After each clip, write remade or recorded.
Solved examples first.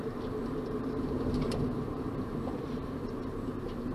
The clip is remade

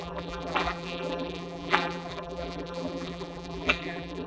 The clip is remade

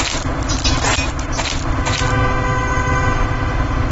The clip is recorded